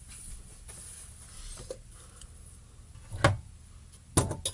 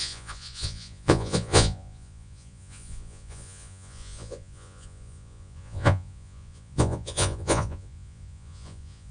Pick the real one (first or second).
first